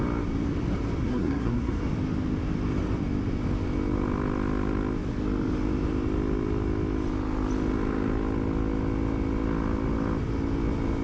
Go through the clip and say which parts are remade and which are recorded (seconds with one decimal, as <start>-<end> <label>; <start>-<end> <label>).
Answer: 0.0-1.0 recorded; 1.0-1.8 remade; 1.8-11.0 recorded

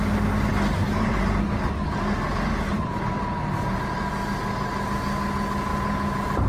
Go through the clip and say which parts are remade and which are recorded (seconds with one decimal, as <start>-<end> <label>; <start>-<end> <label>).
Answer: 0.0-6.5 recorded

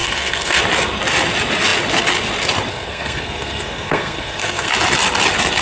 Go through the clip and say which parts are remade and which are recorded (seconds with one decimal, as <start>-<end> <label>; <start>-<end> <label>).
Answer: 0.0-0.6 remade; 0.6-2.7 recorded; 2.7-4.7 remade; 4.7-5.6 recorded